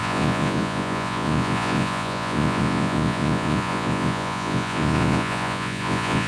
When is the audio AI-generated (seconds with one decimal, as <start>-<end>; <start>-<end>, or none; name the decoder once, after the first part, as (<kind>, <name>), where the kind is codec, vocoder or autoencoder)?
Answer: 0.0-6.3 (vocoder, Vocos)